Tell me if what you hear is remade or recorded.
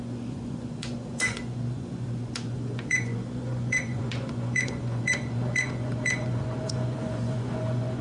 remade